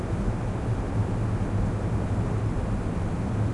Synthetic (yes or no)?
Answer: no